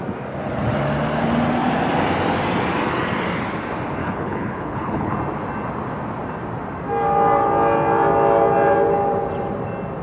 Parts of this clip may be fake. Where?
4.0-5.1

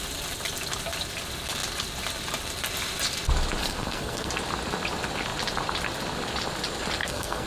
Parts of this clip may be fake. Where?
3.6-4.3; 7.0-7.5

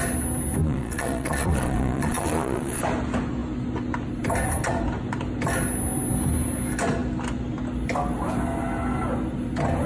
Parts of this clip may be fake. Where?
0.6-2.8

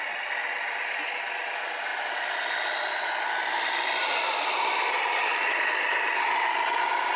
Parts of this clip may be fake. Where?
none